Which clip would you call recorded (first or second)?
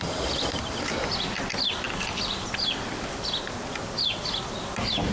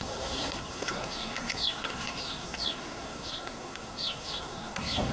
first